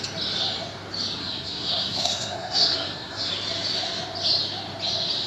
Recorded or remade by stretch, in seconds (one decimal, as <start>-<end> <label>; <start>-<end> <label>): 0.0-1.2 recorded; 1.2-3.3 remade; 3.3-5.3 recorded